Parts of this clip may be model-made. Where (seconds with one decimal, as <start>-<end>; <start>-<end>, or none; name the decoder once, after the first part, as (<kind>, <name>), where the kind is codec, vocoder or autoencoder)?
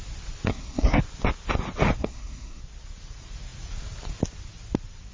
0.5-1.0 (codec, SNAC); 2.0-2.6